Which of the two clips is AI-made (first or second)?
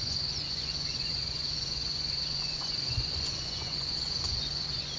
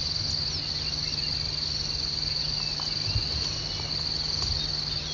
first